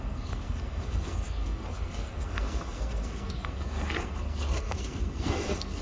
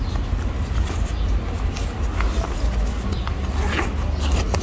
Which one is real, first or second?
second